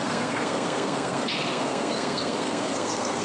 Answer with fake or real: fake